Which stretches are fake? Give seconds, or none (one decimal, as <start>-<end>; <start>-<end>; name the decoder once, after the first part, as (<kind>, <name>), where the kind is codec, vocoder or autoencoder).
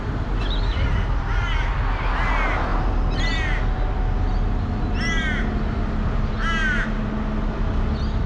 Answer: none